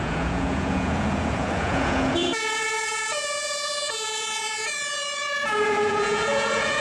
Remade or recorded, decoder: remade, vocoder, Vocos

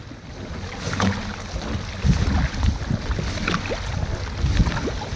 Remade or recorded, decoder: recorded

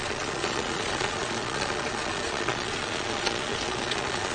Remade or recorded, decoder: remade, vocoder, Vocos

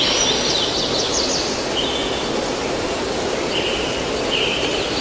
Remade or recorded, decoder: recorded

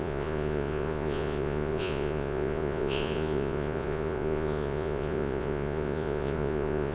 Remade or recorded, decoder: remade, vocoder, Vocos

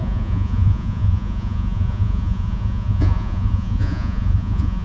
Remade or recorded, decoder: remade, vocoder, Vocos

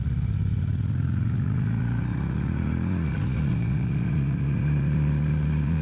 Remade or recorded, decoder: remade, vocoder, Vocos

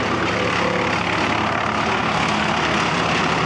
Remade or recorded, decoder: recorded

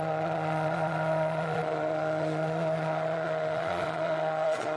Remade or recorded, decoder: remade, vocoder, Vocos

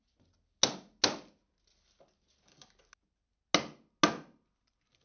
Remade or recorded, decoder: recorded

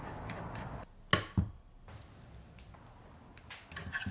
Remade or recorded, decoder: recorded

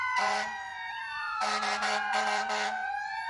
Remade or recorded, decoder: remade, vocoder, Vocos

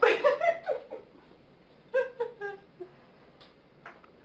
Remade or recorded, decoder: recorded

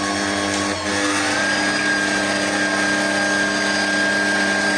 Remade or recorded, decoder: recorded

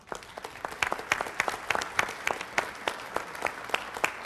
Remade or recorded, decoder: recorded